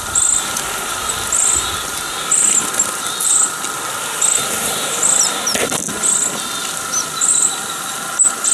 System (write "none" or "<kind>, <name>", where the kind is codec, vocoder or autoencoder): none